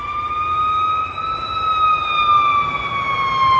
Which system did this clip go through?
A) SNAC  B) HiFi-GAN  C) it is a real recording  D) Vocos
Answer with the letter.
C